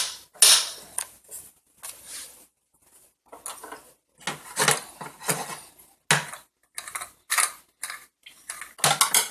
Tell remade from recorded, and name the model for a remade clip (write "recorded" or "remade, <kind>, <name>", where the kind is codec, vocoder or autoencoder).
recorded